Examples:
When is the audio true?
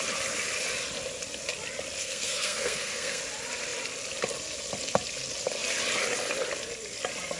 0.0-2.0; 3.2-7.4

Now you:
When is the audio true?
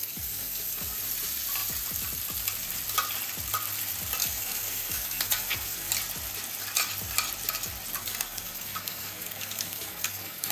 1.0-4.2; 5.9-8.0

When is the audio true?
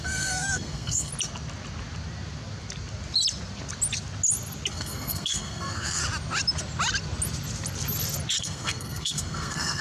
1.1-4.7; 6.0-8.4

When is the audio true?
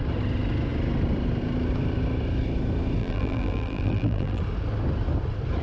0.0-3.0; 4.4-5.6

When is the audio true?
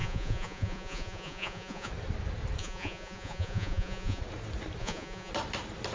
1.9-2.6; 4.2-4.8; 5.3-5.9